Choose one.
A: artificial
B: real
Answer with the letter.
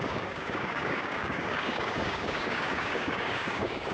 A